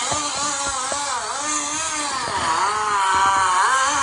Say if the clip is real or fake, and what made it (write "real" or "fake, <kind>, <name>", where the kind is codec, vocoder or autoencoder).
real